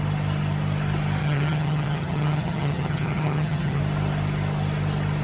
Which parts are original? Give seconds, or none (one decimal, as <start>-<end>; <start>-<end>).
0.0-1.2; 3.8-5.2